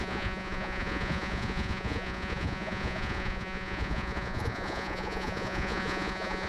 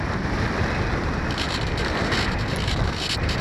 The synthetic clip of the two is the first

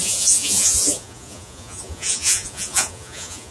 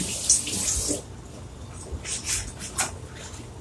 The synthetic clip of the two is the first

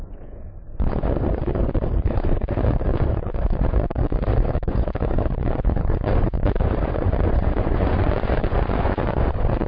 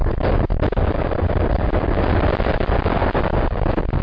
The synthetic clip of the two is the first